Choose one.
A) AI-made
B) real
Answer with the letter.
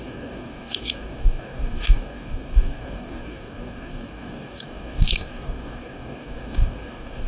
A